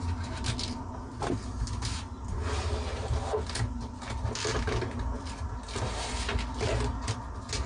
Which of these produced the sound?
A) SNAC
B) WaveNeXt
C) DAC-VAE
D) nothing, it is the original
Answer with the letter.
D